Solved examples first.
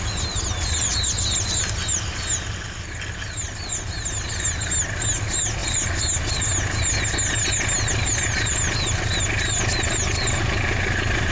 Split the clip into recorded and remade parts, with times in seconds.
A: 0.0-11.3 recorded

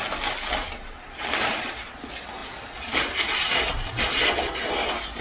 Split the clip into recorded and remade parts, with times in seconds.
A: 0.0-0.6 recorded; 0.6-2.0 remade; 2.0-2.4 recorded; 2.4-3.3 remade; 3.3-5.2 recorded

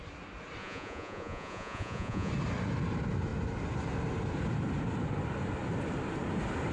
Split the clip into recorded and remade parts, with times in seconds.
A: 0.0-0.6 recorded; 0.6-2.3 remade; 2.3-6.7 recorded